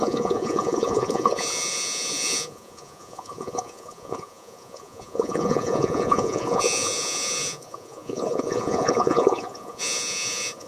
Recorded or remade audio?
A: remade